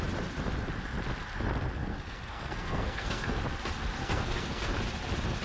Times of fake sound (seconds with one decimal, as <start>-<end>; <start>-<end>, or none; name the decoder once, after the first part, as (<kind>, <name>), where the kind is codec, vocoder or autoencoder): 1.8-3.4 (codec, SNAC); 4.0-4.7